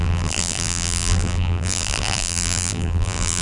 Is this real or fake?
fake